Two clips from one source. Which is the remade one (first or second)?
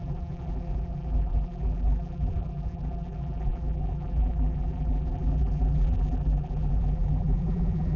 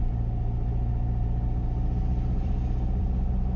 first